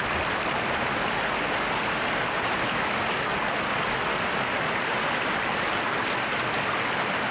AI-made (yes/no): no